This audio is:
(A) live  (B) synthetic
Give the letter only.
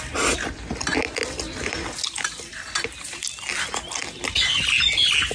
A